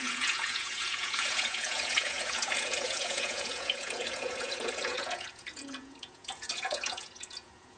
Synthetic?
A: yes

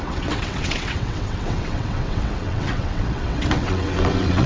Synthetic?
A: yes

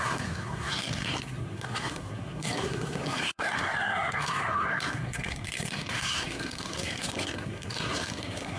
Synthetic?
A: yes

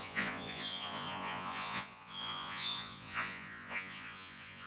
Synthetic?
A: yes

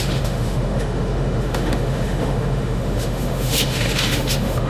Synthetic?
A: yes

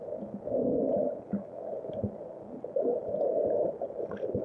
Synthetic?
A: no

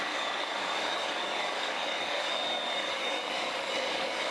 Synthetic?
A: yes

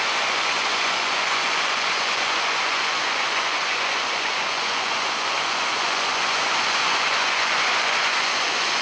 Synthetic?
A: yes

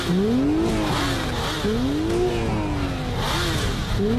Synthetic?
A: no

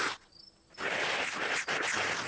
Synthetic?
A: no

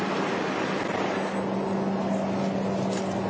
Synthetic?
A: no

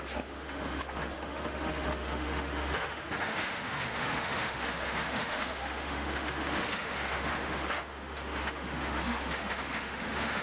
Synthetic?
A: yes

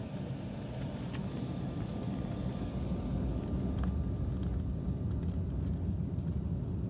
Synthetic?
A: no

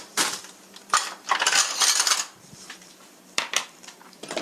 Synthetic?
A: yes